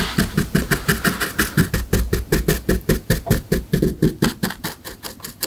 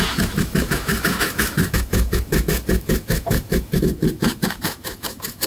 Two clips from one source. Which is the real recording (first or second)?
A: first